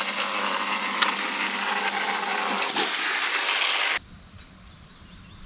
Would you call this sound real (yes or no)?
yes